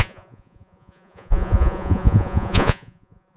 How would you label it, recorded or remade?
remade